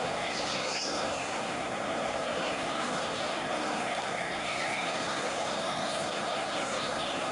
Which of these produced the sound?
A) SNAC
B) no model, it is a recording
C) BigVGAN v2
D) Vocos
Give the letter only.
A